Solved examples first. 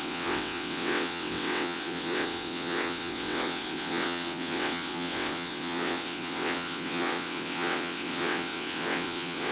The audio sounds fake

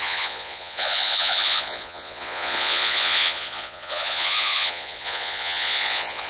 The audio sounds fake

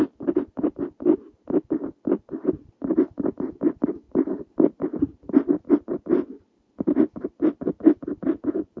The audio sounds real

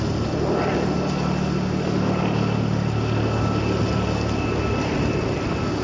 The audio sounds real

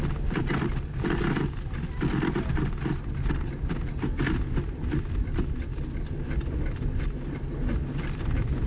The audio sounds real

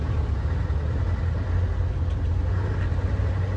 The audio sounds real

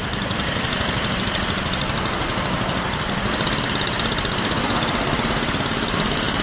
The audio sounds real